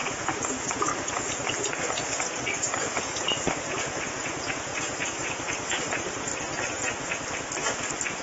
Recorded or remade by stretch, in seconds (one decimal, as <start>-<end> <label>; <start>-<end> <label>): 0.0-6.3 remade; 6.3-8.2 recorded